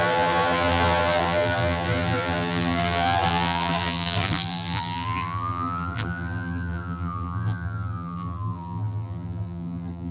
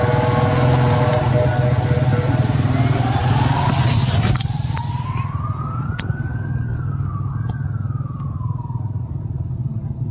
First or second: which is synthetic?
first